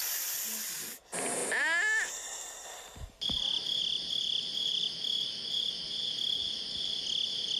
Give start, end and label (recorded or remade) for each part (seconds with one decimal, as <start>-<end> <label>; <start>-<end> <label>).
0.0-7.6 recorded